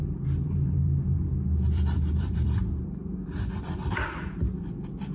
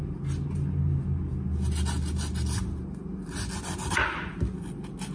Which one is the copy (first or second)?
first